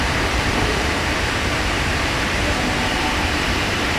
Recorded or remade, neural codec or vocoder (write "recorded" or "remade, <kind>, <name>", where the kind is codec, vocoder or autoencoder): remade, vocoder, BigVGAN v2